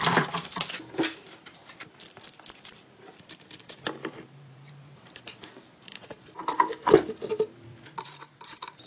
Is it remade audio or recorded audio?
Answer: remade